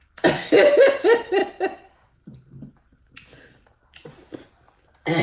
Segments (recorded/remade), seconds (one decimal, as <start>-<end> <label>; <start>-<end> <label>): 0.0-5.2 recorded